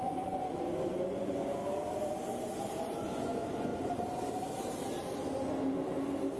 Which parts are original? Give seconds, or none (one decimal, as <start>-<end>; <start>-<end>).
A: 1.6-2.8; 3.7-6.4